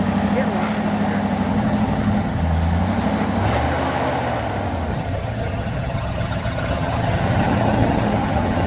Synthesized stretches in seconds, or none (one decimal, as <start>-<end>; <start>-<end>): 1.5-2.4; 4.9-8.7